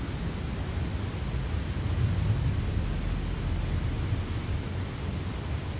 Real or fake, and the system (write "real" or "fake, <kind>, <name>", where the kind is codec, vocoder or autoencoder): real